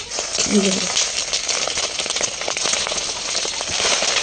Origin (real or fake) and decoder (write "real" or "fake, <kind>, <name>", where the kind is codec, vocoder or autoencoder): real